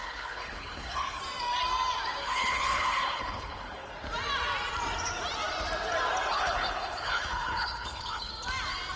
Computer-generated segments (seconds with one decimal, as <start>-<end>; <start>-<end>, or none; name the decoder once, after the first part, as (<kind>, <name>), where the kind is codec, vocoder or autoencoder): 0.0-1.2 (codec, HILCodec); 2.2-3.9; 6.3-8.3